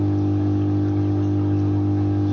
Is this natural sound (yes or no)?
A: yes